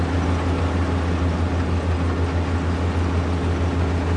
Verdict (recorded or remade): recorded